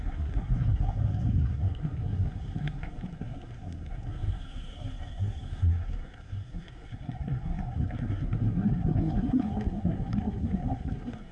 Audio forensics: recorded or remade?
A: remade